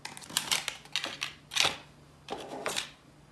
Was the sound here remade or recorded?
recorded